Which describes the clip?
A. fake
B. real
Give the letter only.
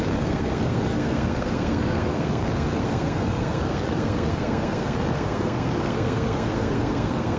A